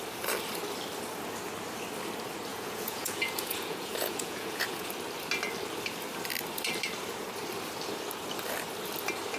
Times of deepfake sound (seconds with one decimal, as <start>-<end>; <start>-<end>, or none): 2.5-4.9